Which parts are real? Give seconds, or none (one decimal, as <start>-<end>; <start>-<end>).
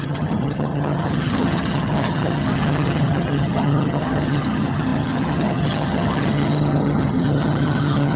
none